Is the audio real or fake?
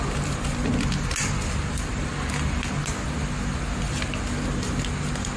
real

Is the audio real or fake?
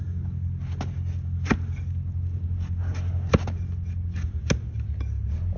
real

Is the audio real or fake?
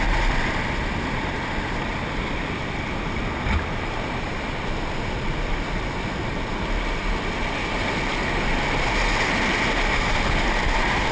real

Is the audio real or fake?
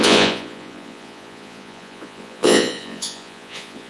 fake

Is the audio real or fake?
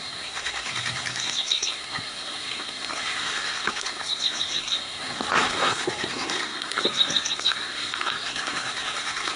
fake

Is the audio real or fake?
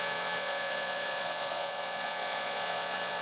fake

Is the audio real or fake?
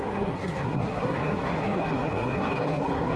fake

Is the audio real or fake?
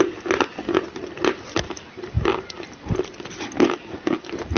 real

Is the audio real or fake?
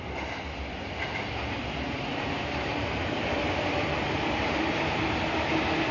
fake